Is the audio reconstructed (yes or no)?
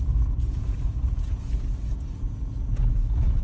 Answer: yes